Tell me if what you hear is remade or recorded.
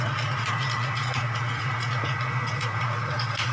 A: remade